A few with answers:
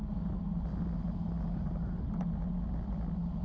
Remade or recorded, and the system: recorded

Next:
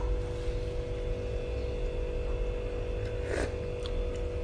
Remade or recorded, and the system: recorded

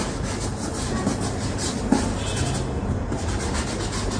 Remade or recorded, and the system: recorded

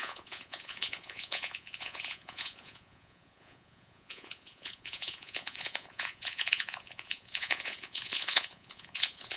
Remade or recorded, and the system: remade, vocoder, Vocos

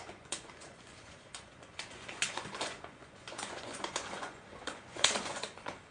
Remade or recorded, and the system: remade, vocoder, Vocos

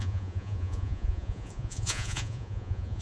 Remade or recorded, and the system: remade, vocoder, Vocos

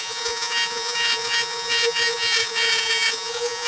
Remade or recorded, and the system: remade, vocoder, Vocos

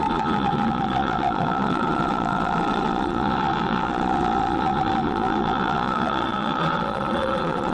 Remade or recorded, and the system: remade, vocoder, Vocos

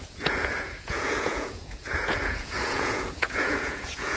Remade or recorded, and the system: remade, vocoder, Vocos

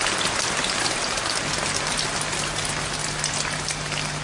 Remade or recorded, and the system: recorded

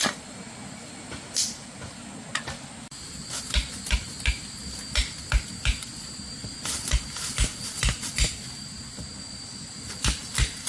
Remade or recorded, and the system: recorded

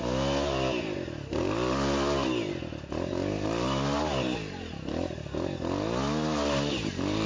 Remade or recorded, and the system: recorded